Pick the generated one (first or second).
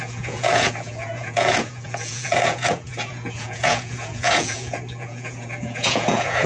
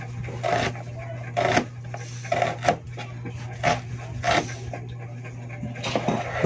first